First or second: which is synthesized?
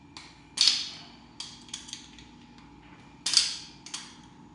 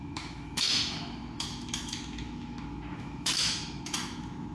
second